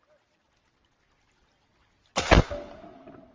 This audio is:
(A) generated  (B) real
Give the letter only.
B